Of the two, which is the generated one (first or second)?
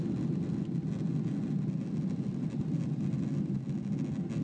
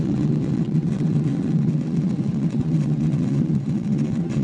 second